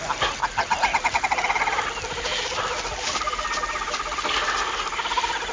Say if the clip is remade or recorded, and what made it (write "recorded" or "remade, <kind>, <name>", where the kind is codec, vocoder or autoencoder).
recorded